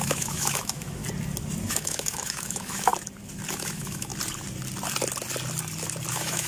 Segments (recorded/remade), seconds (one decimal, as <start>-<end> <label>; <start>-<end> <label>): 0.0-1.0 remade; 1.0-1.7 recorded; 1.7-2.9 remade; 2.9-3.5 recorded; 3.5-4.1 remade; 4.1-6.1 recorded; 6.1-6.5 remade